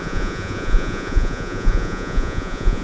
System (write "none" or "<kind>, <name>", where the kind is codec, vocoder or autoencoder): vocoder, Vocos